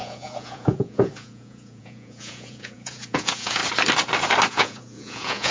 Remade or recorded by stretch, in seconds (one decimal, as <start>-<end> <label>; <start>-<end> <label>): 0.0-3.6 remade; 3.6-4.5 recorded; 4.5-5.5 remade